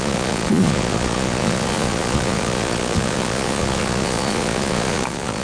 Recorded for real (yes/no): no